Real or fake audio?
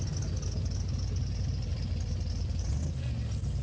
real